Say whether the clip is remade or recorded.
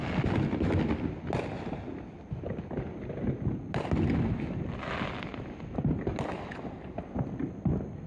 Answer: recorded